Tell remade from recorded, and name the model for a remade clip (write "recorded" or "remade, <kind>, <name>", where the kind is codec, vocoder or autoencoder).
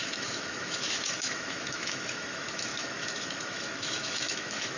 remade, autoencoder, DAC-VAE